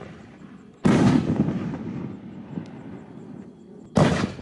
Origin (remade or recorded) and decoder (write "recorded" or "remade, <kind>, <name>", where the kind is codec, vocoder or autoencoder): recorded